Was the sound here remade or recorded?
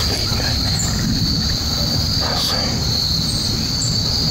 recorded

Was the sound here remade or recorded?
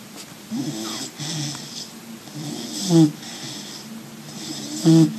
recorded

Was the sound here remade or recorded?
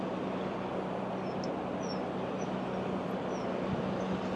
recorded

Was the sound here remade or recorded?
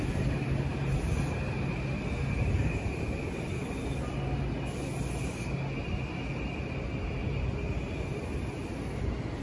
recorded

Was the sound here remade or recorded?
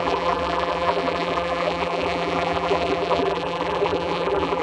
remade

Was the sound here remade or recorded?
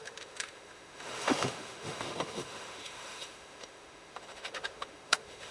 remade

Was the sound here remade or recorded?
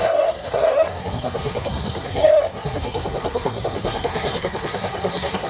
remade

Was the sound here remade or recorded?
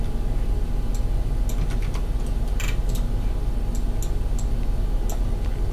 recorded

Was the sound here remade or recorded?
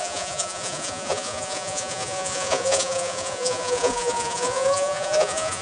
remade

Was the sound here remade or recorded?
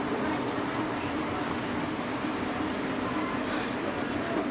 recorded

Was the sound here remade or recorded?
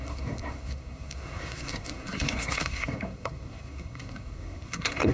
remade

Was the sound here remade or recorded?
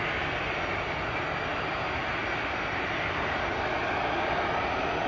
recorded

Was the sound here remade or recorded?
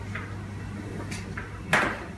recorded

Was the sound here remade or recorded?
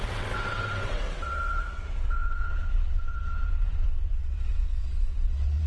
remade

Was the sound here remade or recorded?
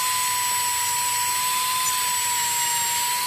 recorded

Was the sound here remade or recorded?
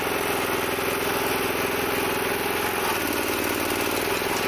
recorded